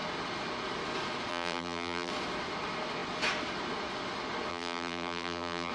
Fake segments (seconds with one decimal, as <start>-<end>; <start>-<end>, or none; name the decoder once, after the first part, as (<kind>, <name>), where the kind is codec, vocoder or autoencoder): 1.3-2.1 (vocoder, BigVGAN v2); 4.5-5.7